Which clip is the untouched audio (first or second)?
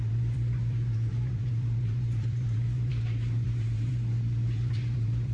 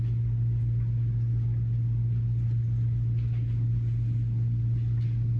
second